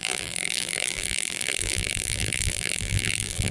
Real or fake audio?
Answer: fake